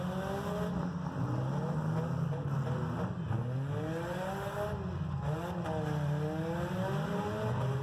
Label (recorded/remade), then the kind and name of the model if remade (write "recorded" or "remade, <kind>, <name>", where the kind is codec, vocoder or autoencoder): recorded